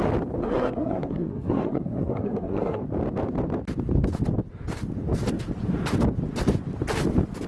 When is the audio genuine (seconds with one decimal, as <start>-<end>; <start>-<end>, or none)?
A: 0.0-0.4; 2.8-7.5